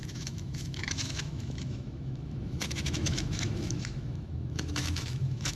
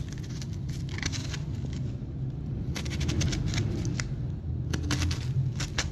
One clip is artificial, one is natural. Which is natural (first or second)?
second